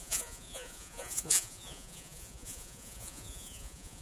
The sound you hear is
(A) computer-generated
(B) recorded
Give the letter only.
A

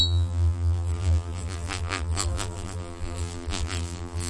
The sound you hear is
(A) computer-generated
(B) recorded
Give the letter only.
A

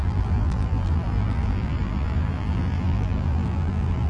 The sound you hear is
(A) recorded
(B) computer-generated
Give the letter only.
B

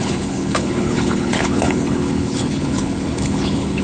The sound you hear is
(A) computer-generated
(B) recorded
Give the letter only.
A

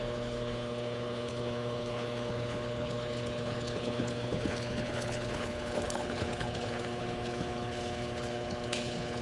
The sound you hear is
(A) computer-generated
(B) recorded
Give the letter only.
A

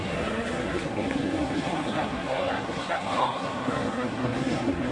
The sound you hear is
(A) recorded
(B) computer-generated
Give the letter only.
B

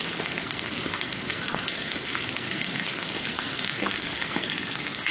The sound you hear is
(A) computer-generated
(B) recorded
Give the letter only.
A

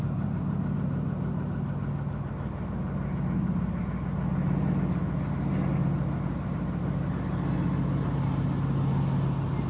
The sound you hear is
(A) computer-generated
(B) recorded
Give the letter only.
B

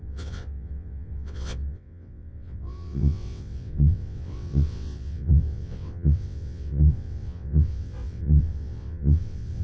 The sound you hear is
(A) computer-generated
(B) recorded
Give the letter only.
A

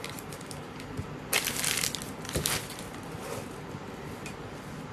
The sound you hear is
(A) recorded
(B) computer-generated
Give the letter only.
A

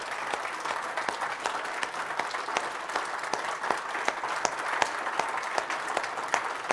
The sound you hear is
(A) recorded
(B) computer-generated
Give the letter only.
A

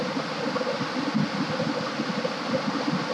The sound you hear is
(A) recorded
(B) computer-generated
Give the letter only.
A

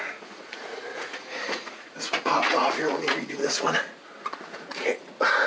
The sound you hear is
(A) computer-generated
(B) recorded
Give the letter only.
A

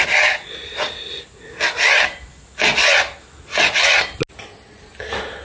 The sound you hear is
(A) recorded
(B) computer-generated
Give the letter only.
A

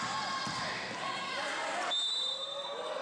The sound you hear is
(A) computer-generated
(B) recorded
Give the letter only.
B